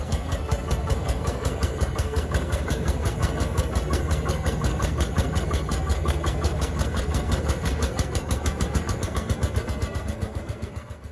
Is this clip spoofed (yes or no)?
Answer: yes